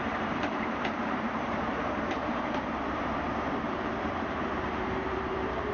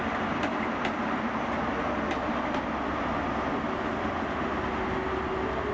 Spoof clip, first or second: first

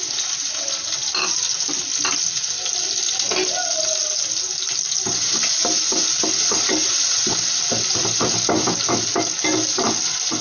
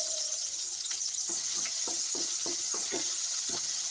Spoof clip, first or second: second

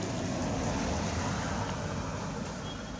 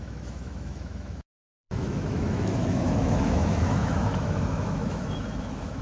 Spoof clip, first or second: second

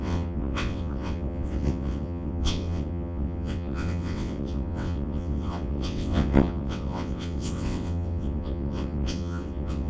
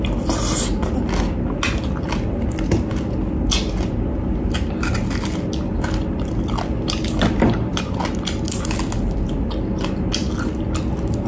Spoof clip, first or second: first